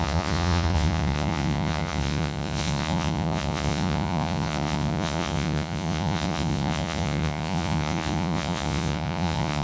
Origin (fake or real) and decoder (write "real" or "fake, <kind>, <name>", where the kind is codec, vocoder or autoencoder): fake, vocoder, Vocos